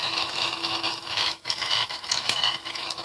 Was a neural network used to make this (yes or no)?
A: yes